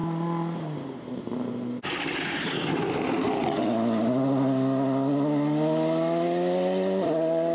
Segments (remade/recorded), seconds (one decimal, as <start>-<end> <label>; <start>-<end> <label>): 0.0-7.5 recorded